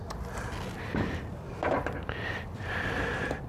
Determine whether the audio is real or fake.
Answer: real